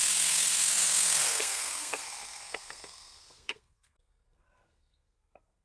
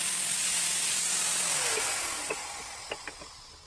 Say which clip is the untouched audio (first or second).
second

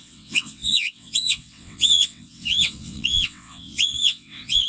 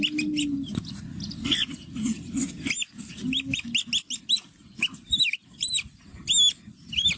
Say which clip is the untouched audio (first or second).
second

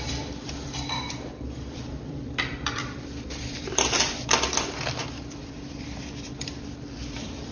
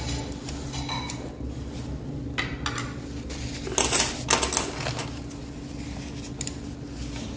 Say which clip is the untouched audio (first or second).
second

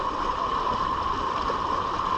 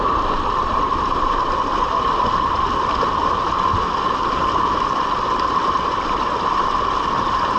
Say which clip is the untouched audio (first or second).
second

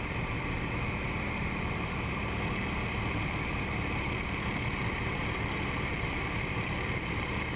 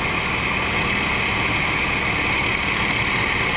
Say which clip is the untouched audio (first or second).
second